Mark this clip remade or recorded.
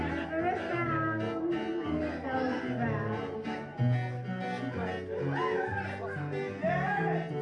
recorded